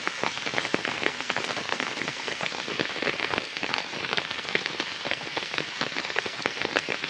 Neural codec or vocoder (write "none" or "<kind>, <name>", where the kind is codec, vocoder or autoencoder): codec, SNAC